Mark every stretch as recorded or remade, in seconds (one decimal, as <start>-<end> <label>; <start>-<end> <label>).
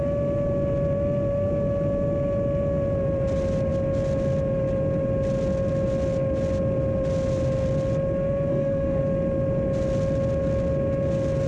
0.0-8.5 recorded; 8.5-9.0 remade; 9.0-11.5 recorded